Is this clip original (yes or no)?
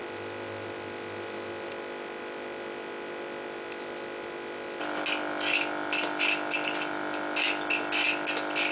yes